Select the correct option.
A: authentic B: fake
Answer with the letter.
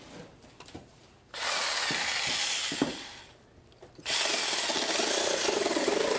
A